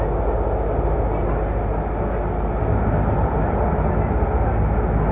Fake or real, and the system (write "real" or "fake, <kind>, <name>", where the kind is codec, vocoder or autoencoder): real